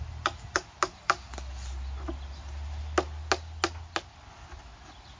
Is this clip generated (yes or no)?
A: no